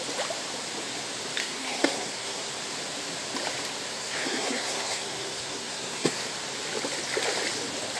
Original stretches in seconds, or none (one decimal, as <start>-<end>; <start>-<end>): 0.0-1.4; 2.5-3.9; 6.3-8.0